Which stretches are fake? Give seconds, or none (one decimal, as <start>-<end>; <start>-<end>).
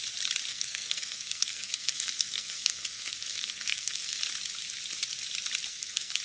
0.5-4.2; 5.7-6.2